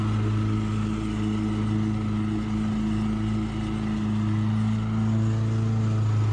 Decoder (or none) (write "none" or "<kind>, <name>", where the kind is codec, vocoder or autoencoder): none